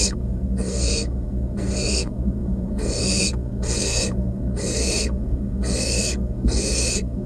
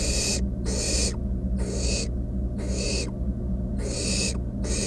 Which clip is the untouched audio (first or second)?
second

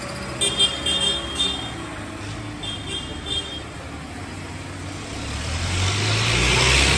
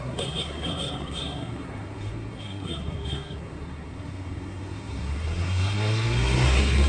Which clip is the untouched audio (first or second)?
first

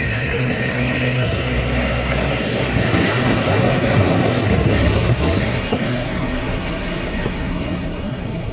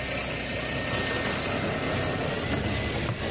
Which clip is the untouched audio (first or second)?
second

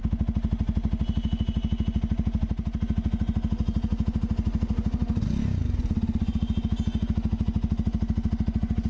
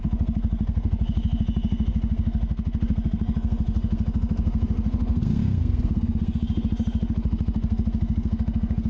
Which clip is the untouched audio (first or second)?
first